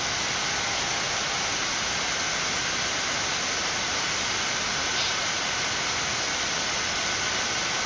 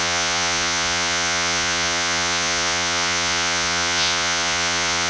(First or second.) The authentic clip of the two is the first